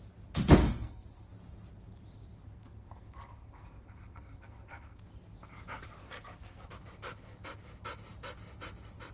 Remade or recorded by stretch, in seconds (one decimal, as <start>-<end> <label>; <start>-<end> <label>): 0.0-0.6 recorded; 0.6-1.3 remade; 1.3-2.4 recorded; 2.4-5.0 remade; 5.0-6.0 recorded; 6.0-6.7 remade; 6.7-9.1 recorded